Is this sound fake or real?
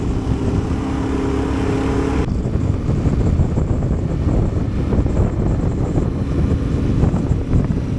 real